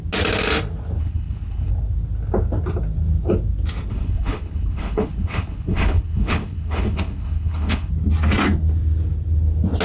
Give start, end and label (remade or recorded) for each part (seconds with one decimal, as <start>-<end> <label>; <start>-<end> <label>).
0.0-1.0 recorded; 1.0-1.7 remade; 1.7-3.9 recorded; 3.9-7.9 remade; 7.9-9.8 recorded